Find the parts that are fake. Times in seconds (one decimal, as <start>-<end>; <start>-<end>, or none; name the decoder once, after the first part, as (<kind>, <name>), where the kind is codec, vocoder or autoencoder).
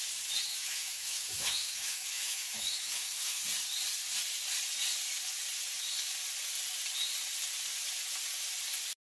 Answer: 0.5-3.4 (autoencoder, DAC-VAE)